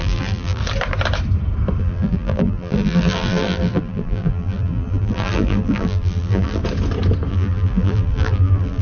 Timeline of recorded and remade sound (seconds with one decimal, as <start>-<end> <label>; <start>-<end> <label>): 0.0-0.6 remade; 0.6-1.8 recorded; 1.8-6.6 remade; 6.6-7.3 recorded; 7.3-8.8 remade